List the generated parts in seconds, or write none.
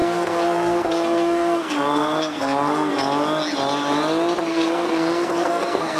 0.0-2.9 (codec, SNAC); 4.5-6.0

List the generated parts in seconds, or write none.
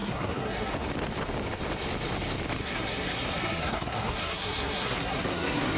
0.0-0.7 (codec, SNAC); 2.6-5.8